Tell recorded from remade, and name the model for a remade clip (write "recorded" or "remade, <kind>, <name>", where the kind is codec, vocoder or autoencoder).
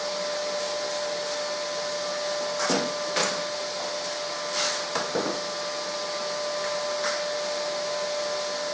recorded